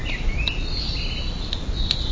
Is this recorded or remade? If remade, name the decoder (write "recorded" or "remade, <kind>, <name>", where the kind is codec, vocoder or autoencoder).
recorded